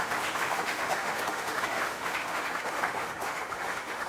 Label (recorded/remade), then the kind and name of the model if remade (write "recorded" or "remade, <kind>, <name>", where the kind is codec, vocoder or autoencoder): remade, autoencoder, DAC-VAE